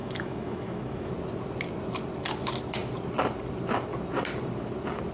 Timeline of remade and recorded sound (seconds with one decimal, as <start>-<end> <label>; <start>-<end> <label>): 0.0-1.1 remade; 1.1-5.1 recorded